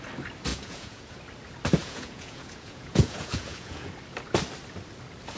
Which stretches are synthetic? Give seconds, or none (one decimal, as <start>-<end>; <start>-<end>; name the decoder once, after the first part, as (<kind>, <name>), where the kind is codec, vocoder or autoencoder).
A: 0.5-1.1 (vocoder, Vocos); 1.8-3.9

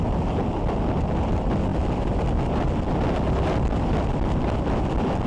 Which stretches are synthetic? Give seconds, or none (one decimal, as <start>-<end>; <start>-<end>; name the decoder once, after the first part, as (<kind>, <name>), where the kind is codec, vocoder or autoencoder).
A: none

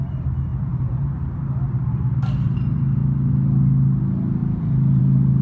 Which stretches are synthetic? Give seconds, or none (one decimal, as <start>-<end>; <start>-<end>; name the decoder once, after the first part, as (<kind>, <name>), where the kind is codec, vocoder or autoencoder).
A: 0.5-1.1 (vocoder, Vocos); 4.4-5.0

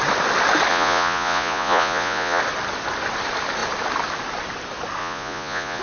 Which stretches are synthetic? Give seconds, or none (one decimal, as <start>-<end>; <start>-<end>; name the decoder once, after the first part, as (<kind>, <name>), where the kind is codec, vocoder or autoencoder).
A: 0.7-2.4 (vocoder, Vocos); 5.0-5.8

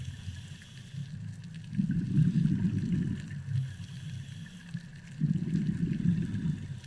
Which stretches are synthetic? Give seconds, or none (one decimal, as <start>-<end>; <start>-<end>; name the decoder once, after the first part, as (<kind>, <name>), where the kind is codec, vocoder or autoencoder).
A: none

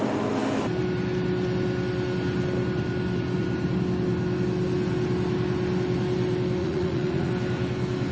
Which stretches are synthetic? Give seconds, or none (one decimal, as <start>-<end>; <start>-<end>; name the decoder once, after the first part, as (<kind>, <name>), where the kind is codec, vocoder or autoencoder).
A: 6.6-7.3 (vocoder, Vocos)